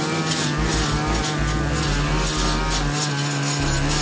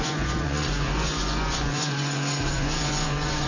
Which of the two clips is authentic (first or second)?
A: first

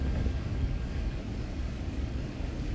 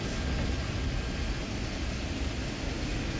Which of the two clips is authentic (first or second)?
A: second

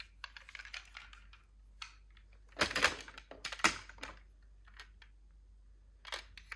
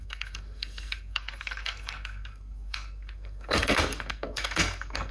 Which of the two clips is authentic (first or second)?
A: first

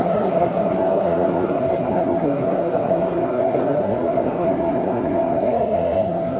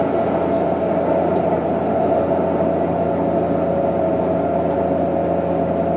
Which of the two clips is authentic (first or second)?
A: second